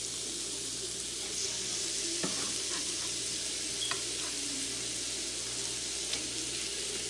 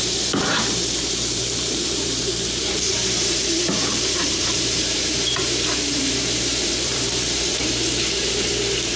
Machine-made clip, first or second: second